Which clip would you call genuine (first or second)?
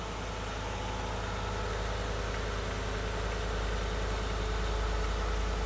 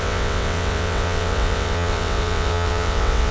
first